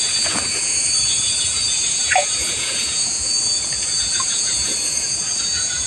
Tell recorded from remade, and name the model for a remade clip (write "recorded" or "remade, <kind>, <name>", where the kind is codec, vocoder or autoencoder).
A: remade, vocoder, Vocos